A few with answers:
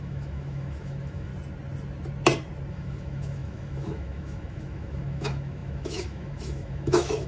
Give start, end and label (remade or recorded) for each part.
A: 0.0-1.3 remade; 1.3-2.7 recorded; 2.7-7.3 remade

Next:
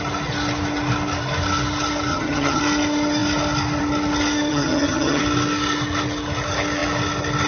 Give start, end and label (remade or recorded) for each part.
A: 0.0-2.1 recorded; 2.1-2.6 remade; 2.6-4.5 recorded; 4.5-5.2 remade; 5.2-7.5 recorded